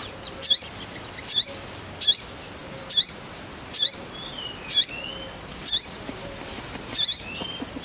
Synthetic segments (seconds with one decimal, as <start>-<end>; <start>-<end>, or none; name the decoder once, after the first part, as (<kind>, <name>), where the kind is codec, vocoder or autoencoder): 0.0-0.7 (vocoder, BigVGAN v2); 1.2-1.7; 2.6-6.0